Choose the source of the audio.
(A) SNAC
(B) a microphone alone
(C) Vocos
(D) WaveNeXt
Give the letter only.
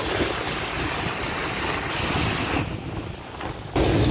B